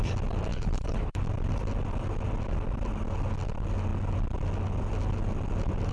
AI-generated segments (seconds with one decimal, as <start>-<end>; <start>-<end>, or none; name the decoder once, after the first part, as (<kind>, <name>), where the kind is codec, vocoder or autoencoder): 0.5-1.2 (codec, HILCodec)